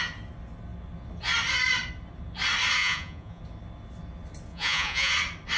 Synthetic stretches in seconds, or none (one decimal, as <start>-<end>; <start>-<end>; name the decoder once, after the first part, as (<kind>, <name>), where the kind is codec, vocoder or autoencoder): 2.8-3.4 (vocoder, Vocos); 4.5-5.1